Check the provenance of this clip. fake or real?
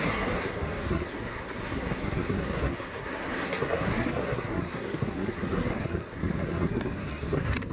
fake